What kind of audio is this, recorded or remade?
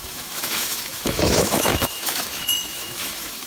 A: remade